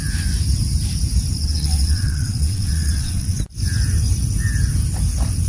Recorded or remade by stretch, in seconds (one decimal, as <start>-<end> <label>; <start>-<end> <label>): 0.0-1.4 recorded; 1.4-3.4 remade; 3.4-5.5 recorded